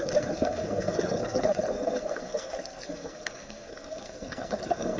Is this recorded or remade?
remade